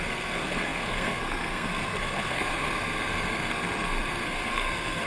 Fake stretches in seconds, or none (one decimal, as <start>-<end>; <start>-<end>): 0.0-5.1